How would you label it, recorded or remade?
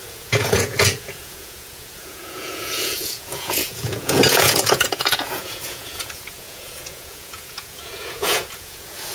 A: remade